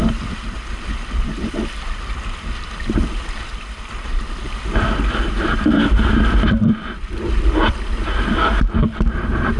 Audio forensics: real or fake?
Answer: fake